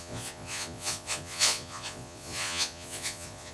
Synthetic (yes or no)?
yes